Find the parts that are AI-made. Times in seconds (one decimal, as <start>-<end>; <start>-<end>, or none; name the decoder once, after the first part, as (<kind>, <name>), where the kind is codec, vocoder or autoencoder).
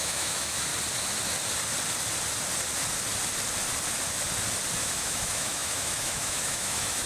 0.0-0.7 (autoencoder, DAC-VAE); 4.8-7.1